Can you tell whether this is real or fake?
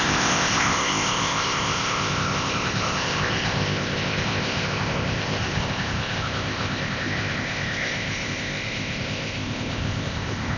fake